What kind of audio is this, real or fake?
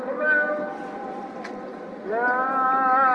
real